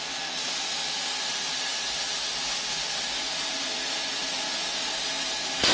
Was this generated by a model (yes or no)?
no